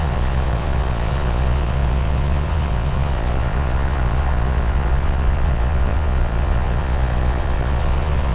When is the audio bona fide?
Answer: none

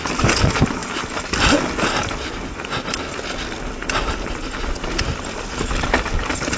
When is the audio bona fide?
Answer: 0.0-6.6

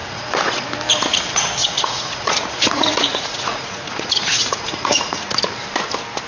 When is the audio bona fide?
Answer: 0.6-1.6; 5.4-6.3

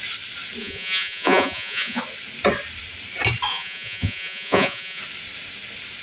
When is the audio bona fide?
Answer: 0.0-0.6; 2.0-3.5; 5.0-6.0

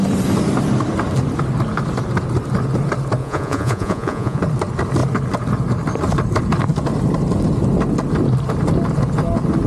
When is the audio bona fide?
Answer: 0.0-3.2; 4.4-9.7

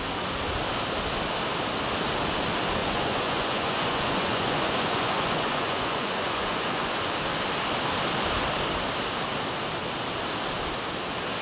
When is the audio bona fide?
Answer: 0.0-2.8; 7.1-11.4